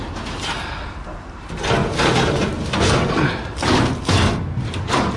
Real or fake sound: real